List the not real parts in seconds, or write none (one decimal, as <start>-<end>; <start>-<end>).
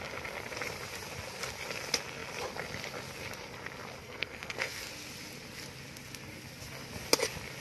4.0-4.9